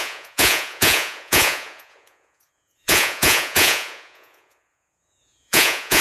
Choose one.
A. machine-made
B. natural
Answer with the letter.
A